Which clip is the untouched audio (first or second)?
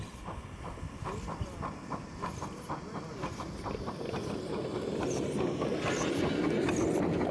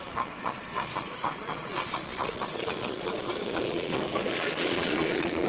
first